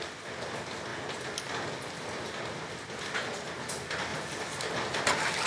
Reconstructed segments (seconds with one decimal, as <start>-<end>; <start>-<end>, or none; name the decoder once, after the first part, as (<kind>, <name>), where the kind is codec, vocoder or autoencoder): none